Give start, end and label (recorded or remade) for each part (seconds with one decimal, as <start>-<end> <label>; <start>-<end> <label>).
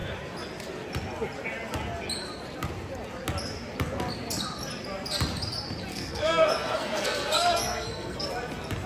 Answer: 0.0-5.9 recorded; 5.9-8.3 remade; 8.3-8.9 recorded